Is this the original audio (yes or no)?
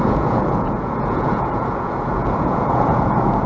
no